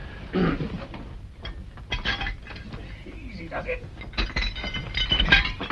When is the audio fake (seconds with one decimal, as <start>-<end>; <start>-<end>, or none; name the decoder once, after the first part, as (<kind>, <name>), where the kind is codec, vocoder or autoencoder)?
0.6-1.6 (vocoder, BigVGAN v2); 5.0-5.7